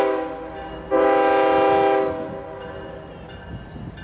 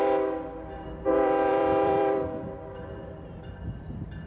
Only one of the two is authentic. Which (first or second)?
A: first